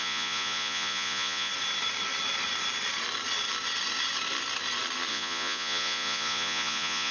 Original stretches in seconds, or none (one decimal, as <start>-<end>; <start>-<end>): 1.5-5.1